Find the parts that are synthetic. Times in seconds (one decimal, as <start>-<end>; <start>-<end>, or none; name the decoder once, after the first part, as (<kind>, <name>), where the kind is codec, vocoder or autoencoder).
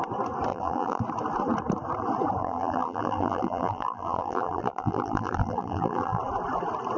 0.5-1.0 (vocoder, BigVGAN v2); 2.4-6.2